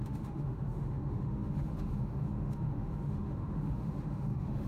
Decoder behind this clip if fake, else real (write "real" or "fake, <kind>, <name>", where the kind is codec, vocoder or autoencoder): fake, autoencoder, DAC-VAE